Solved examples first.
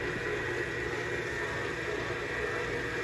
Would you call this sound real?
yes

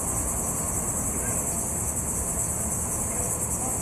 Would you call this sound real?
yes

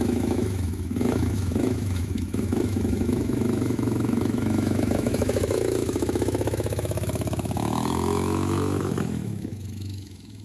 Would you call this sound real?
no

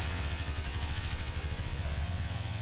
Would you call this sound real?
no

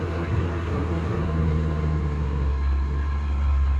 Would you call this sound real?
no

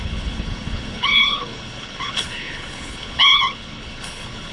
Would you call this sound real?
no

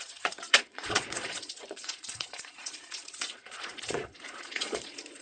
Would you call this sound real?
no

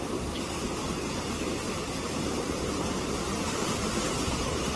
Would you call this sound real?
yes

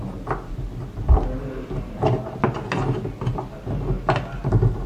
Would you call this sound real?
yes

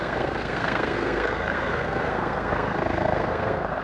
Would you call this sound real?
no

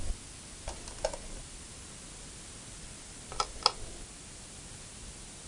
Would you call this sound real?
yes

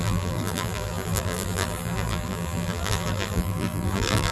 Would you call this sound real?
no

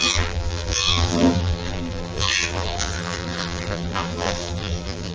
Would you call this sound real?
no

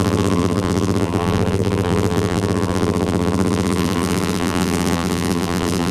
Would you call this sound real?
no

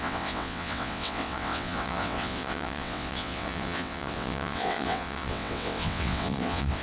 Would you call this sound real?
no